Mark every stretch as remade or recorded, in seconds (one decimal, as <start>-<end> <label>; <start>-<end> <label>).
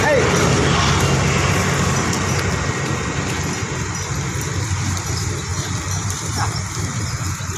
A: 0.0-7.6 recorded